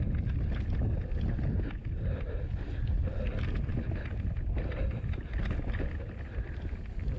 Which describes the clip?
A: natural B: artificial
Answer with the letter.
A